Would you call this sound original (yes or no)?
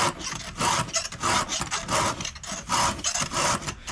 yes